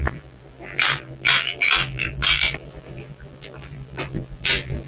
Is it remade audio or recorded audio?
remade